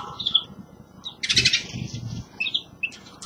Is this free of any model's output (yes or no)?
yes